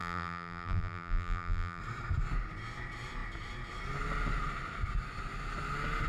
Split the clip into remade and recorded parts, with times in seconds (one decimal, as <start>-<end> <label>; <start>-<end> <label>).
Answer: 0.0-1.8 remade; 1.8-6.1 recorded

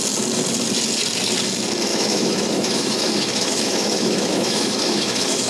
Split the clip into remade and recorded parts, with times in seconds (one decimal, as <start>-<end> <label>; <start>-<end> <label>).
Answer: 0.0-1.9 recorded; 1.9-5.5 remade